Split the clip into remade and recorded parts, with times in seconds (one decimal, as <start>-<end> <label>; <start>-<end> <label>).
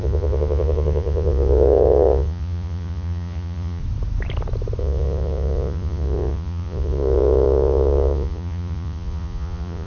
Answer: 0.0-3.8 remade; 3.8-4.8 recorded; 4.8-9.9 remade